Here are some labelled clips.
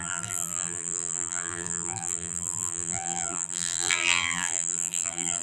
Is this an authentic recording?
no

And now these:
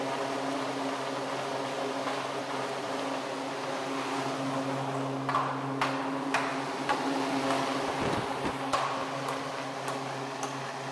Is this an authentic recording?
yes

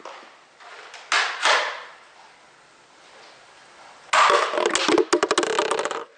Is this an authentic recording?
yes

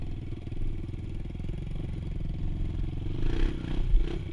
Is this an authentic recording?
yes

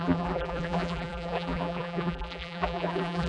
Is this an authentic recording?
no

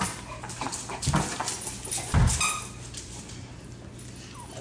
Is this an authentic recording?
yes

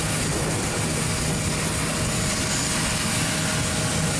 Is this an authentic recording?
yes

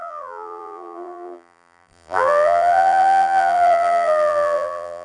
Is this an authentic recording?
no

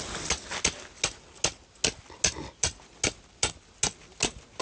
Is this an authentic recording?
yes